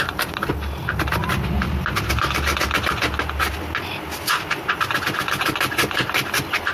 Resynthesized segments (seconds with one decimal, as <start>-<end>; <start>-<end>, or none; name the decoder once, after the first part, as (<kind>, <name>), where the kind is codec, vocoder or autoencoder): none